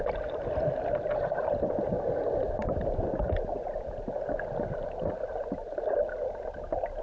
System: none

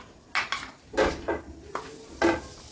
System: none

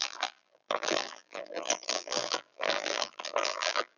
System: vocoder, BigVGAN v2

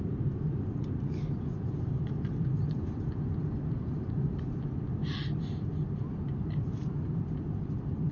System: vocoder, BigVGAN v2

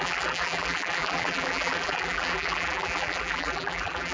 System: vocoder, BigVGAN v2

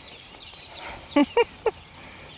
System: vocoder, BigVGAN v2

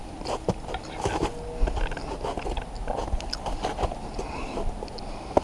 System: none